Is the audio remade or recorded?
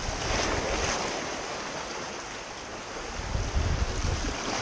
recorded